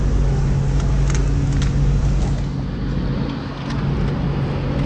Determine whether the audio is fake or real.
real